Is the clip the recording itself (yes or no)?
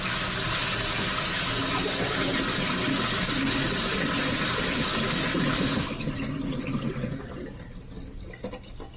yes